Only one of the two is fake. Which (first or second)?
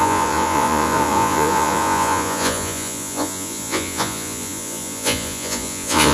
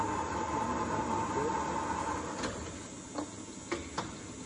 first